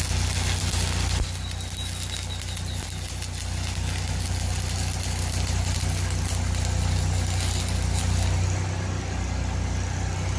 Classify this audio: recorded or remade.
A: recorded